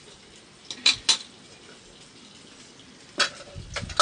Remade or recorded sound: recorded